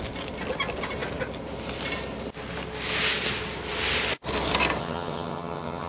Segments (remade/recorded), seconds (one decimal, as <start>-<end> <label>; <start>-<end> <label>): 0.0-4.8 recorded; 4.8-5.9 remade